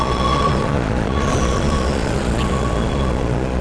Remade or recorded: remade